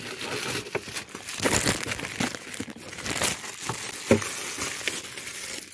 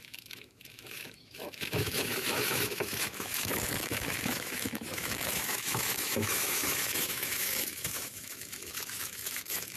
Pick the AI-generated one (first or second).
second